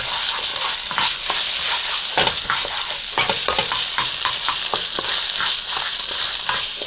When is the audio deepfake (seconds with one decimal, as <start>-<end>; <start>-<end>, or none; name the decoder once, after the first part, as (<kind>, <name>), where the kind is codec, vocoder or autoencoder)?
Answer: 0.0-6.9 (vocoder, BigVGAN v2)